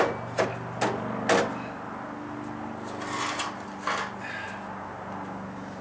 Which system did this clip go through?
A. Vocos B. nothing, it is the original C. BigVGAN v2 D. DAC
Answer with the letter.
B